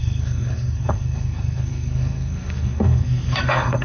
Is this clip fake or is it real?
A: fake